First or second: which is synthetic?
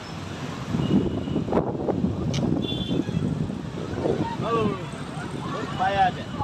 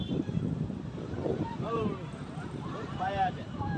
second